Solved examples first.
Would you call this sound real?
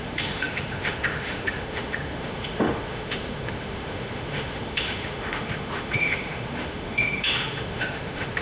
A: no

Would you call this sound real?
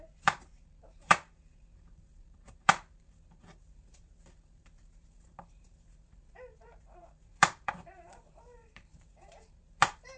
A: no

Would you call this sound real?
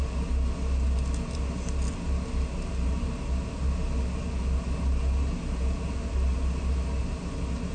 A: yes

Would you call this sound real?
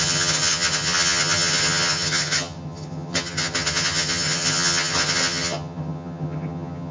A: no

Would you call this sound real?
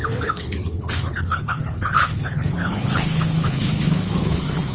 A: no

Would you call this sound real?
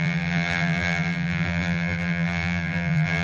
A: no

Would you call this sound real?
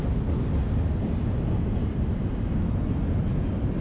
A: yes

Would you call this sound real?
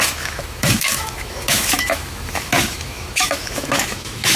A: no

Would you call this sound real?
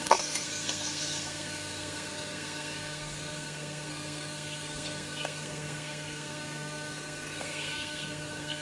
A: no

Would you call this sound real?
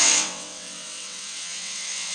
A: no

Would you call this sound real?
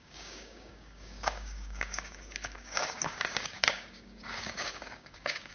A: no